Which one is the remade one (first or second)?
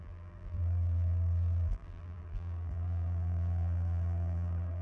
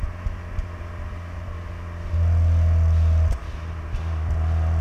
first